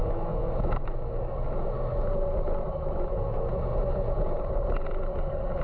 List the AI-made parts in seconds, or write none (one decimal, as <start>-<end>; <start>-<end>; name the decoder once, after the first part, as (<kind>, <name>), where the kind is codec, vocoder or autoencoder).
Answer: 0.0-0.9 (autoencoder, DAC-VAE)